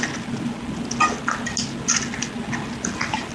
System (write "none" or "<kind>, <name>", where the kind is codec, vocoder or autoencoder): none